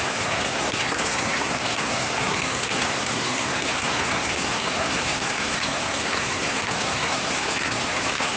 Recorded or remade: remade